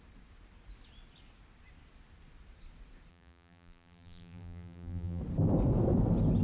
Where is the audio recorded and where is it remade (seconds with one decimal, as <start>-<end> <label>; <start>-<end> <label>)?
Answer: 0.0-3.1 recorded; 3.1-5.2 remade; 5.2-6.4 recorded